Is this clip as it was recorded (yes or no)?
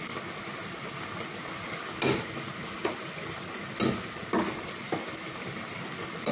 yes